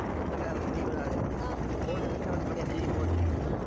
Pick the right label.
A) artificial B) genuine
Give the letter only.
B